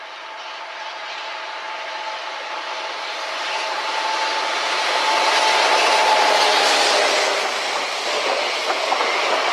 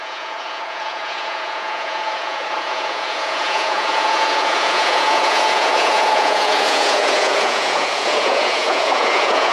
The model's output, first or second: second